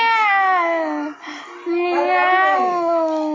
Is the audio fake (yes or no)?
no